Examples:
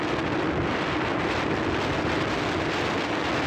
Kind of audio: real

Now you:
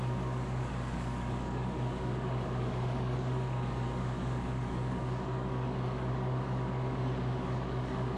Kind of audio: fake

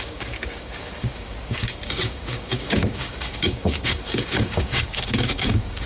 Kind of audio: fake